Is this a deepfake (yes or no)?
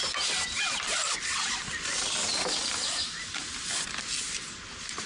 no